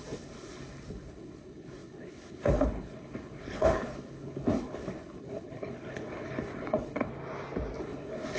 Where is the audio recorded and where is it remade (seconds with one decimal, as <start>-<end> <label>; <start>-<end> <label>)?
0.0-7.1 remade; 7.1-7.8 recorded; 7.8-8.4 remade